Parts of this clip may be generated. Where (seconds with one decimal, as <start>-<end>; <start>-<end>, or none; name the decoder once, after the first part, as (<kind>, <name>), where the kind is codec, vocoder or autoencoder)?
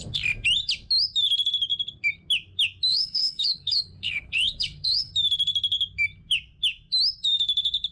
2.9-5.1 (codec, HILCodec)